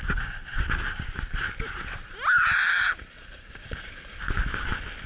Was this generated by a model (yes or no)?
no